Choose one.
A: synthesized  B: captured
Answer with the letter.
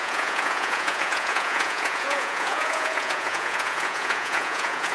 A